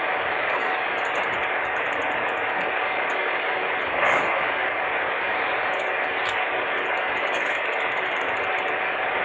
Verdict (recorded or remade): remade